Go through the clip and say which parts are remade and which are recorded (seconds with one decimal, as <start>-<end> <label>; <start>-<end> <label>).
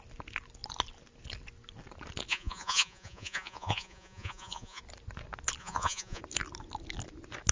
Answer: 0.0-2.3 recorded; 2.3-4.8 remade; 4.8-5.6 recorded; 5.6-6.2 remade; 6.2-7.5 recorded